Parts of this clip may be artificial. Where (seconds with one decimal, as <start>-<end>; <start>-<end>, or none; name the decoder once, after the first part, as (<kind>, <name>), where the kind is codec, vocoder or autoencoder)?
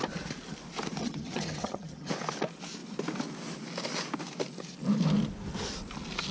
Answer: 1.0-2.1 (vocoder, HiFi-GAN)